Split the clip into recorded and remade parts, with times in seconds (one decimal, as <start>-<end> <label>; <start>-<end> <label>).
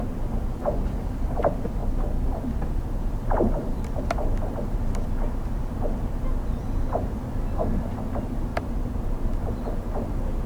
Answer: 0.0-8.5 recorded; 8.5-9.3 remade; 9.3-10.5 recorded